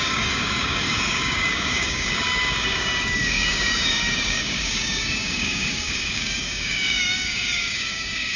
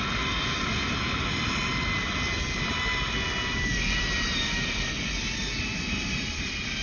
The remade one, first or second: first